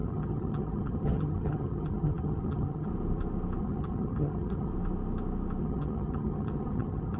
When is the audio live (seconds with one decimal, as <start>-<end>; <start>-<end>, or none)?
2.9-3.6; 4.7-5.6